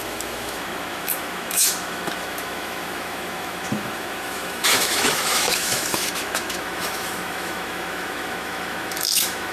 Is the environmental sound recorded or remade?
remade